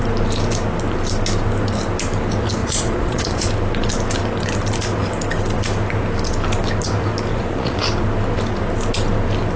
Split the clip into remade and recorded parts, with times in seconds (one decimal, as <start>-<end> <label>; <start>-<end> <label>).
0.0-2.6 recorded; 2.6-3.5 remade; 3.5-7.3 recorded; 7.3-7.8 remade; 7.8-9.6 recorded